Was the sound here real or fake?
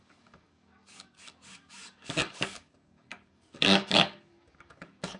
fake